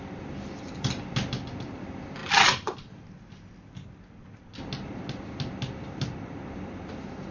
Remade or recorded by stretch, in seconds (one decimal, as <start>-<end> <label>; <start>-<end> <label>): 0.0-7.3 recorded